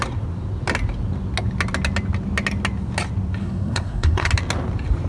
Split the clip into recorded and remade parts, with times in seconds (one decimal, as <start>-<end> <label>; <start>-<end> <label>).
0.0-3.4 recorded; 3.4-4.3 remade; 4.3-5.1 recorded